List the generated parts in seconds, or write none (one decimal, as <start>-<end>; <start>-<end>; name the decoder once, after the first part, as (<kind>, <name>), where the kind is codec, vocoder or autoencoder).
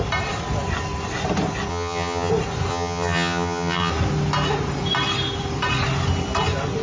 1.7-2.3 (vocoder, HiFi-GAN); 2.7-3.9